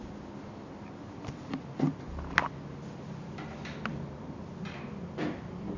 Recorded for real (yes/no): yes